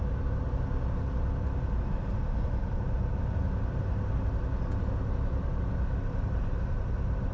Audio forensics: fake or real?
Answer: real